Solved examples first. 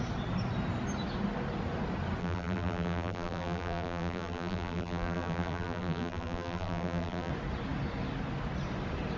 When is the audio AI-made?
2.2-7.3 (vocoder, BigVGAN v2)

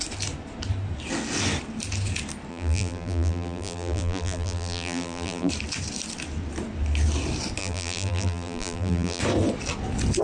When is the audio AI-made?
2.5-5.5 (vocoder, BigVGAN v2); 7.6-9.2

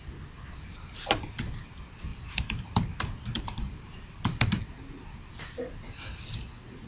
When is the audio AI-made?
2.1-5.3 (vocoder, BigVGAN v2)

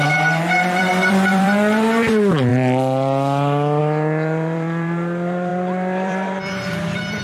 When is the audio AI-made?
0.0-7.2 (vocoder, BigVGAN v2)

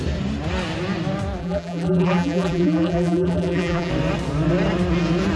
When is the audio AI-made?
1.4-3.9 (vocoder, BigVGAN v2)

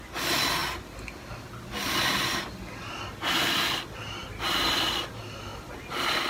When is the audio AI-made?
none